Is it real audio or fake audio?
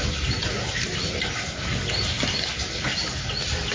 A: real